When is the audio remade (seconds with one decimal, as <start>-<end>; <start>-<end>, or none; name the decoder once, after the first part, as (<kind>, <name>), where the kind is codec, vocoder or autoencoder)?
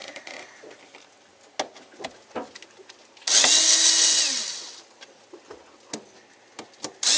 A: 0.0-0.8 (vocoder, Vocos)